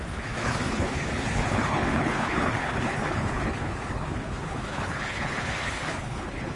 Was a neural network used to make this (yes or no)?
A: yes